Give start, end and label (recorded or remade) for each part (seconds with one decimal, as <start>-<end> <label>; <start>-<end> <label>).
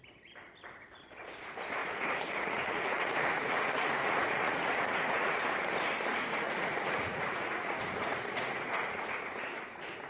0.0-1.8 recorded; 1.8-5.4 remade; 5.4-6.1 recorded; 6.1-9.1 remade; 9.1-10.1 recorded